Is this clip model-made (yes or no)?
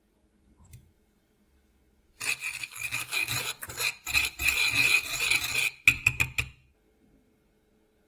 no